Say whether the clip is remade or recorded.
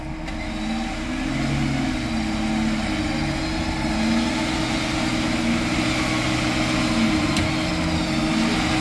recorded